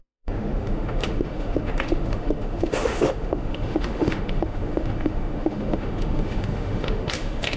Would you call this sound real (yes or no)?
no